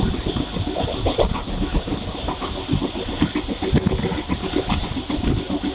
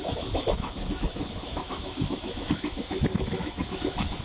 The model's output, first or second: second